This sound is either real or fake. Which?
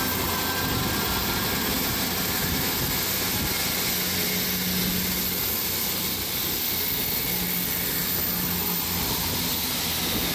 real